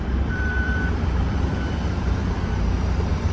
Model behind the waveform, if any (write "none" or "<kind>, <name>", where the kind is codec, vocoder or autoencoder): vocoder, BigVGAN v2